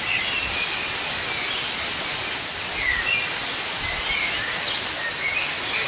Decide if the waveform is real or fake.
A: real